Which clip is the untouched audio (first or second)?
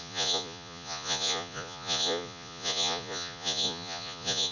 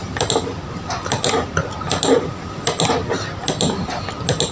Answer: second